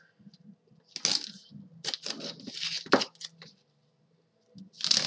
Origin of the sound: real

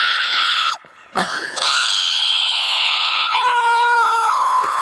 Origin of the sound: fake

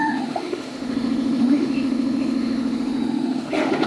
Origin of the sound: fake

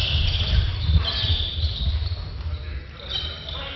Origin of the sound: real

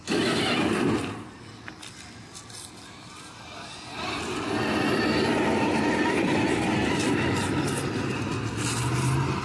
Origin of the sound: real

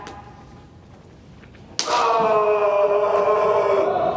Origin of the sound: real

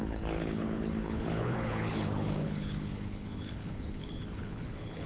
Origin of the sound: fake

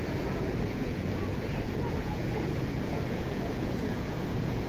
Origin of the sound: fake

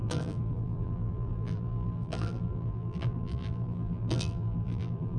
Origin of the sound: fake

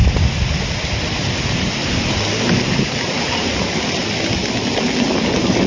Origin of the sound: real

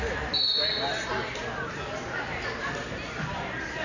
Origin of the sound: real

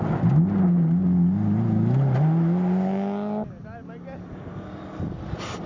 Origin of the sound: real